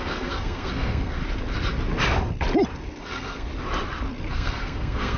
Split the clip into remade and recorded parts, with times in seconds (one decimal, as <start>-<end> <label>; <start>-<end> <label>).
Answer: 0.0-1.2 remade; 1.2-3.0 recorded; 3.0-3.5 remade; 3.5-4.3 recorded; 4.3-5.2 remade